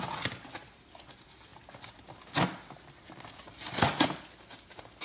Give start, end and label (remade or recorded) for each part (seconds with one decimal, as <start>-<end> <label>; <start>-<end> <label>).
0.0-5.0 recorded

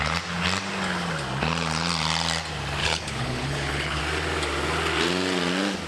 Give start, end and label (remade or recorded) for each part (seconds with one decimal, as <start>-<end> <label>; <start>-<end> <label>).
0.0-2.8 recorded; 2.8-4.0 remade; 4.0-5.9 recorded

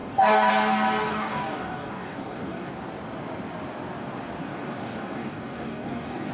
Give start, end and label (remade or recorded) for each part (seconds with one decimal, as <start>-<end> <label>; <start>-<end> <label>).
0.0-0.5 remade; 0.5-1.1 recorded; 1.1-2.7 remade; 2.7-4.4 recorded; 4.4-6.3 remade

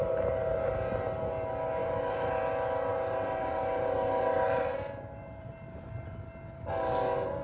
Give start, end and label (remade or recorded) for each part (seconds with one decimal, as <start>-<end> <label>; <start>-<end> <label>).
0.0-1.8 recorded; 1.8-2.3 remade; 2.3-2.9 recorded; 2.9-5.5 remade; 5.5-7.4 recorded

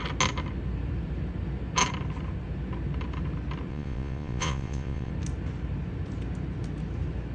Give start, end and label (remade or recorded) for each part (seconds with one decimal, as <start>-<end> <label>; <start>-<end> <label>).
0.0-3.7 recorded; 3.7-5.1 remade; 5.1-7.3 recorded

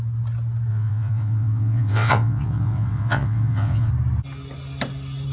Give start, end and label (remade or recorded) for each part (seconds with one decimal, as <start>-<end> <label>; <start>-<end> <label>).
0.0-0.7 recorded; 0.7-3.9 remade; 3.9-5.3 recorded